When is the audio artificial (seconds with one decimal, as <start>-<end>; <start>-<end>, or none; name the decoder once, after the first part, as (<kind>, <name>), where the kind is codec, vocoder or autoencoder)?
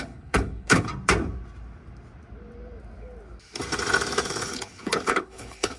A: 0.0-0.9 (codec, HILCodec); 4.3-5.8